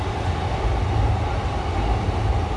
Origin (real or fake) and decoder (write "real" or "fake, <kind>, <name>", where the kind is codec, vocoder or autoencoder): real